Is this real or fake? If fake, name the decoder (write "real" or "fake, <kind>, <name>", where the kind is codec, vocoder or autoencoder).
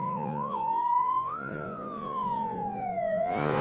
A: fake, vocoder, Vocos